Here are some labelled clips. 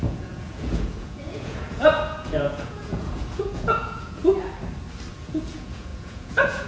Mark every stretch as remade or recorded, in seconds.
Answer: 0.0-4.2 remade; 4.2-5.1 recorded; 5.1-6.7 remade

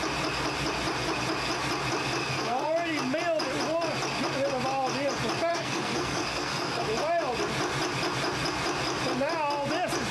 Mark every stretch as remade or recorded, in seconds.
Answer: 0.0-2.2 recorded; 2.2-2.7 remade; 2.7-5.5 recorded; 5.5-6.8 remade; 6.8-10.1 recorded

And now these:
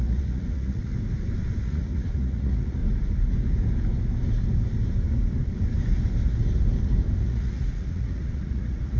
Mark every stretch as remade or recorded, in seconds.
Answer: 0.0-0.9 remade; 0.9-1.6 recorded; 1.6-2.8 remade; 2.8-7.2 recorded; 7.2-9.0 remade

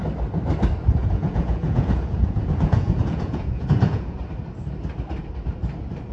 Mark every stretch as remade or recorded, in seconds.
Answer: 0.0-1.0 recorded; 1.0-4.2 remade; 4.2-6.1 recorded

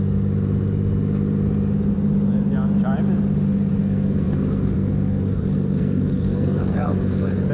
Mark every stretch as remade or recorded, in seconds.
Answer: 0.0-3.8 recorded; 3.8-7.5 remade